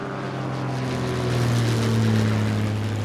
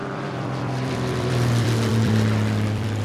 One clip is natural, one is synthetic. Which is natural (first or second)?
first